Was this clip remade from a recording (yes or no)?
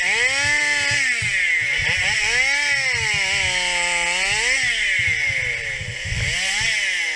no